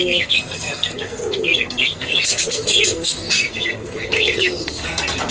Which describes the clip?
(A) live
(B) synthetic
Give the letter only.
B